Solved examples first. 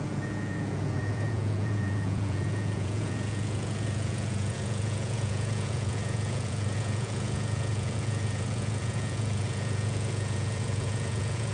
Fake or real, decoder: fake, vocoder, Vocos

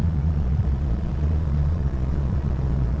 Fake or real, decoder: fake, vocoder, Vocos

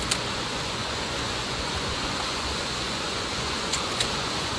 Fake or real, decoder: fake, vocoder, Vocos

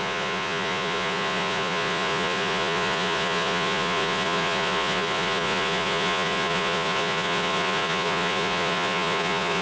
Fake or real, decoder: fake, vocoder, Vocos